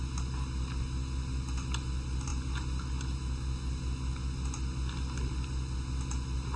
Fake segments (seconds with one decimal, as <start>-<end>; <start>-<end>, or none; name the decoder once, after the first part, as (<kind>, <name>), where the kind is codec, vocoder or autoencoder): none